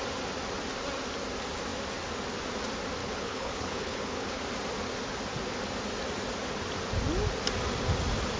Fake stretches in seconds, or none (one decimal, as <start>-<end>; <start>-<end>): 3.0-4.4